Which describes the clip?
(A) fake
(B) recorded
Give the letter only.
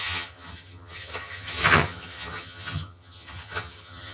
A